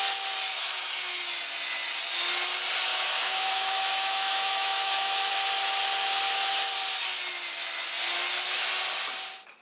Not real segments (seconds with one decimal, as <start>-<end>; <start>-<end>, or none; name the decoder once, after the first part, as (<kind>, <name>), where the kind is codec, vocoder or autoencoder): 0.6-1.2 (autoencoder, DAC-VAE); 2.9-5.3